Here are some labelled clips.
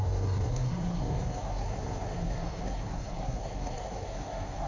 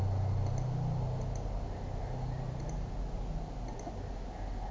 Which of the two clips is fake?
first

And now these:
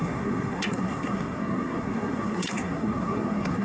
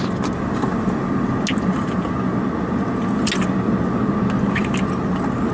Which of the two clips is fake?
first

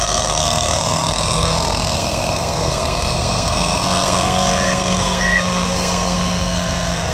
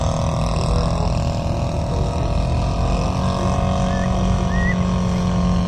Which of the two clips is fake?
first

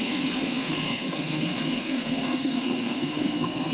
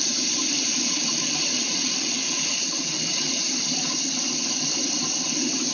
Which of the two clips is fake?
first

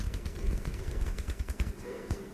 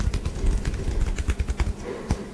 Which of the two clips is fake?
first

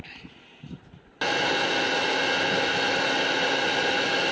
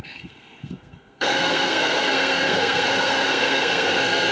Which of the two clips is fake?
second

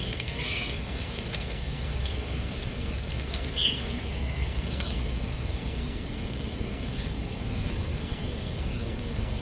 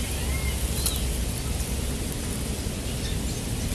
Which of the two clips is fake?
first